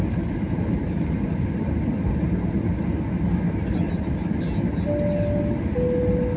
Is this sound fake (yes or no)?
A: no